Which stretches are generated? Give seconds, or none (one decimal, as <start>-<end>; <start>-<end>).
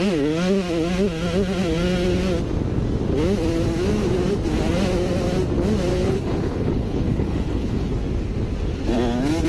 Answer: 5.9-7.9